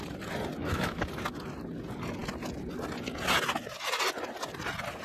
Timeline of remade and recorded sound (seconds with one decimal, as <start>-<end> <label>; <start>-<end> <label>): 0.0-0.6 recorded; 0.6-1.1 remade; 1.1-5.0 recorded